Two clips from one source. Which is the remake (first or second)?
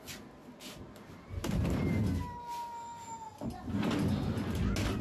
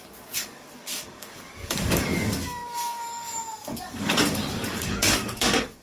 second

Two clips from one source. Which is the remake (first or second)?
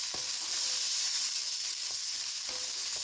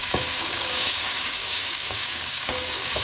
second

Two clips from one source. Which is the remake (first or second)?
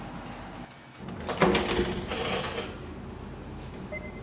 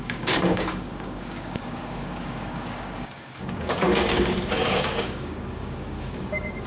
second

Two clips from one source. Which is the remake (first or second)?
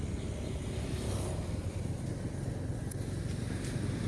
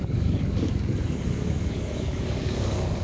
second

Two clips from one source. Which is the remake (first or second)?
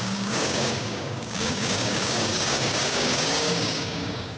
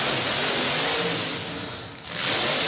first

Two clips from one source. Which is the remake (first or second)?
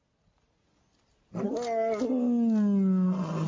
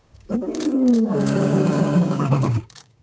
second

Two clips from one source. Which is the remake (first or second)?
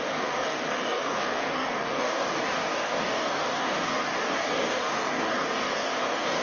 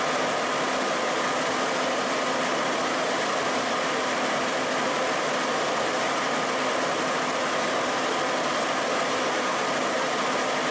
first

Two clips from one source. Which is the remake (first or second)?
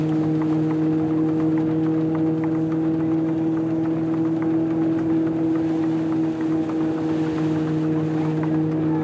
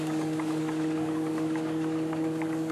second